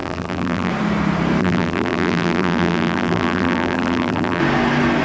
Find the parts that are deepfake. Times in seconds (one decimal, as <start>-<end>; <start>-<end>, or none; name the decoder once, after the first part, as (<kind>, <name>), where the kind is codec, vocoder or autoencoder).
0.0-0.7 (vocoder, BigVGAN v2); 1.4-4.4